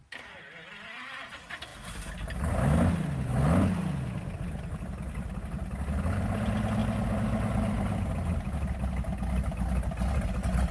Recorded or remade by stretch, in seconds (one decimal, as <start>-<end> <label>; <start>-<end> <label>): 0.0-10.7 recorded